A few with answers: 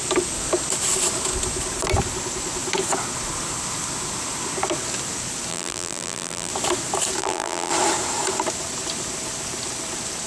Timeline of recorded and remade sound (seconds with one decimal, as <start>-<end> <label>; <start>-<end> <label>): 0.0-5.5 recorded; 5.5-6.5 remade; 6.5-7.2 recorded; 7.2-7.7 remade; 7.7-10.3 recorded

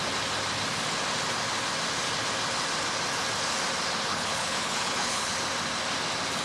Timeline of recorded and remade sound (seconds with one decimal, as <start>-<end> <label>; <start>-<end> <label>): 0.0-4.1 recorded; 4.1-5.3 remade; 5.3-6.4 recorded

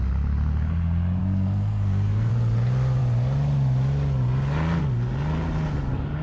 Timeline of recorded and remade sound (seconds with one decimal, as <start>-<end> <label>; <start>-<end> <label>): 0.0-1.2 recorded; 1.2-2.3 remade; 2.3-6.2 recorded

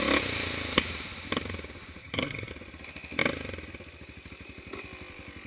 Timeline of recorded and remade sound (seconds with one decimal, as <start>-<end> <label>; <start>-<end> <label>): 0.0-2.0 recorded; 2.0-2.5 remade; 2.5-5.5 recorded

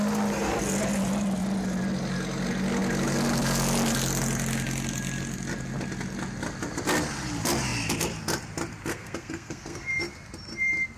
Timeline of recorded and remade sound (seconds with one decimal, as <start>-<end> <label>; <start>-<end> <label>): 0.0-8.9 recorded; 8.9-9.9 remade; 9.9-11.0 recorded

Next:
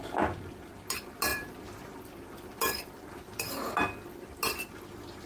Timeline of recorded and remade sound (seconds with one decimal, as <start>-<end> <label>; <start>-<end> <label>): 0.0-1.3 recorded; 1.3-3.7 remade; 3.7-5.3 recorded

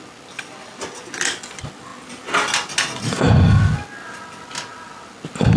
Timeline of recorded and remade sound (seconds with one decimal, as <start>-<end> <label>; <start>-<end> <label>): 0.0-5.6 recorded

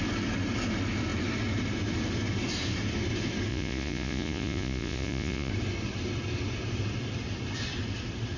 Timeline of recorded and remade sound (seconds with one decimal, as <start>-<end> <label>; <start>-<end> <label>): 0.0-3.5 recorded; 3.5-5.5 remade; 5.5-8.4 recorded